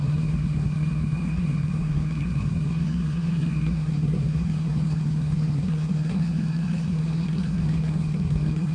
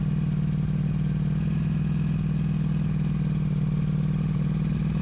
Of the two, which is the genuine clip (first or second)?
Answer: second